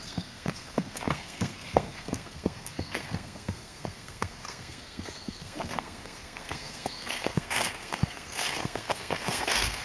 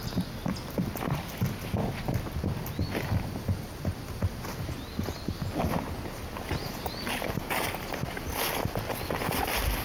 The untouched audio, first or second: second